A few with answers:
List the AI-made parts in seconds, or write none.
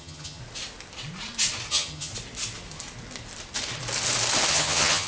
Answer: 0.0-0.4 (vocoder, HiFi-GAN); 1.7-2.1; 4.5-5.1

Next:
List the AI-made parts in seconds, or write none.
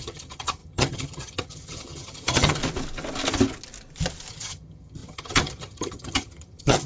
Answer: 0.0-2.6 (vocoder, HiFi-GAN); 4.3-6.9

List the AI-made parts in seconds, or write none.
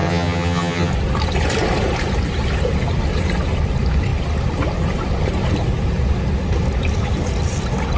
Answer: 0.0-0.9 (vocoder, HiFi-GAN)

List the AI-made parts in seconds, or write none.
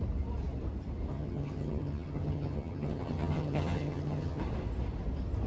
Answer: 1.1-4.4 (vocoder, HiFi-GAN)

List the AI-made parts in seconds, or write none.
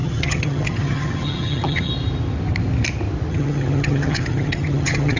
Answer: 0.0-1.9 (vocoder, HiFi-GAN); 3.3-5.2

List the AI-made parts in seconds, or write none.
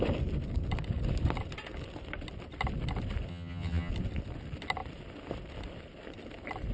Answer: 3.3-3.9 (vocoder, HiFi-GAN)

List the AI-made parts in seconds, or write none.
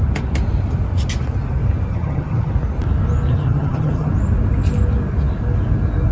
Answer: 1.9-2.5 (vocoder, HiFi-GAN); 3.3-4.1